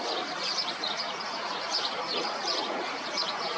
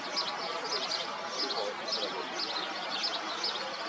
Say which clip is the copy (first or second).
first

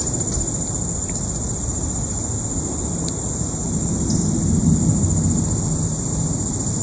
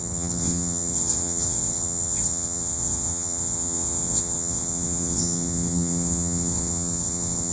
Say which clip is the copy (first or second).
second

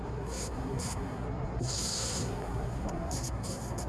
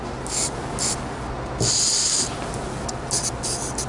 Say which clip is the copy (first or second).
first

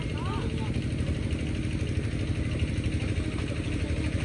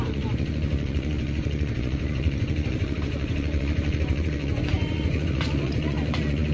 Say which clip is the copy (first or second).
second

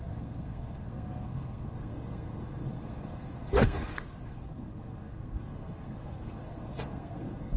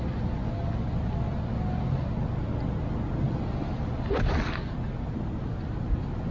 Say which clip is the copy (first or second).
first